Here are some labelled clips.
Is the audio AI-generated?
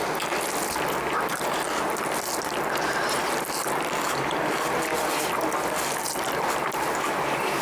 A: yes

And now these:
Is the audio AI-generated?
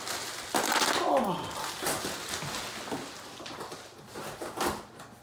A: no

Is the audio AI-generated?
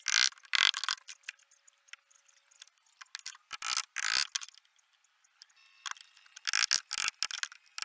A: no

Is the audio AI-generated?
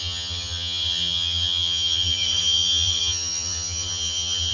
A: yes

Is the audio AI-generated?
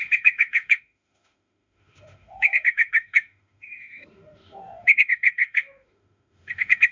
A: yes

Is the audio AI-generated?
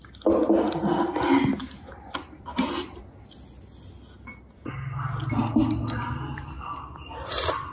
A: no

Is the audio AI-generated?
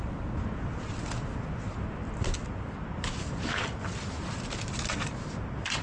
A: no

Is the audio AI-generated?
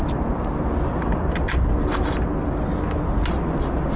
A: no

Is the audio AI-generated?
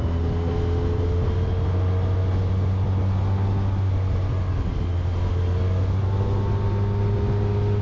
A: no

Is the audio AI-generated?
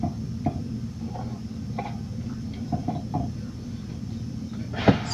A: yes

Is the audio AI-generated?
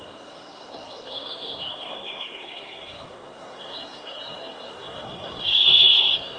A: yes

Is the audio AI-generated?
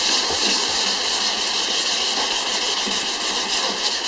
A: no